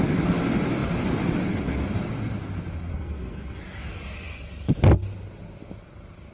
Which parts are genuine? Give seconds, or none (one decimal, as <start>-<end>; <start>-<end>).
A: 0.0-2.9; 3.6-6.3